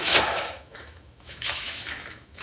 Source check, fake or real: fake